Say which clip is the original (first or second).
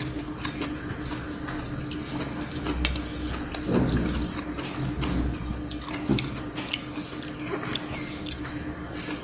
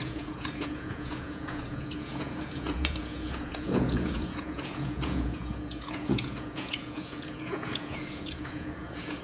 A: first